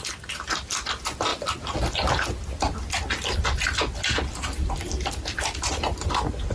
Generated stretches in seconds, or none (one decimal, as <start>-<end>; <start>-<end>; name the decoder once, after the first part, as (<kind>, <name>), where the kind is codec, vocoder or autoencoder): none